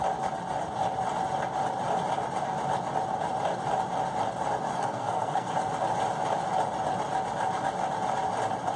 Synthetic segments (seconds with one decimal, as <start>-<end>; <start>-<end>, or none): 4.7-5.5